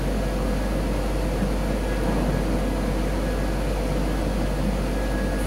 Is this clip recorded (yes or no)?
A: yes